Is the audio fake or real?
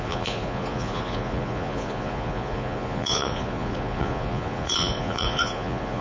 fake